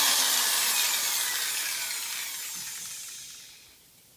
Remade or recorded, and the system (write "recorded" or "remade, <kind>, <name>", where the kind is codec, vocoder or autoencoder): recorded